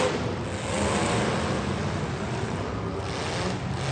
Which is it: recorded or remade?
recorded